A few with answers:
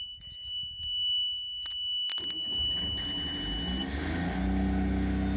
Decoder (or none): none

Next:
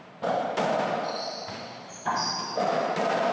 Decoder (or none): none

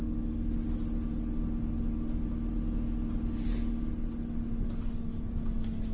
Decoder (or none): none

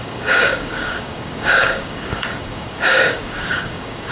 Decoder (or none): codec, DAC